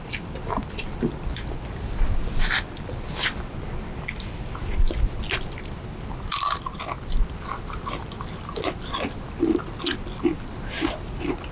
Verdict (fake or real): real